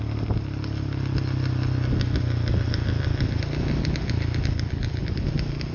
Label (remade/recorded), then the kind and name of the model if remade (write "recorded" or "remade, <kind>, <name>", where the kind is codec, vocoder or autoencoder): recorded